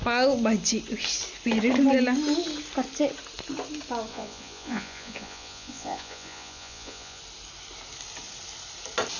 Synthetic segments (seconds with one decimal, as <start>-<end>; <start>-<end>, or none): 4.1-7.2